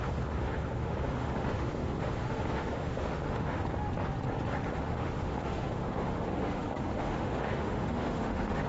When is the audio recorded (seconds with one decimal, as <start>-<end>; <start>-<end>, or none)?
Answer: 3.6-4.7